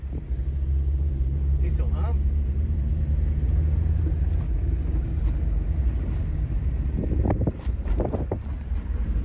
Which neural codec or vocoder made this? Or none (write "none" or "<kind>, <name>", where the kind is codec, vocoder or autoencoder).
vocoder, BigVGAN v2